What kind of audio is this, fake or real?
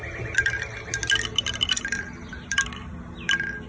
real